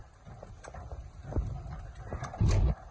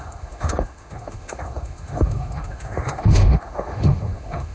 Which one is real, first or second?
first